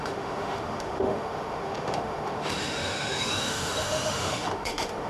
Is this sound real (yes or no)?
no